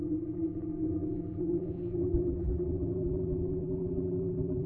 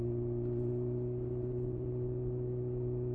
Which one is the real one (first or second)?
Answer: second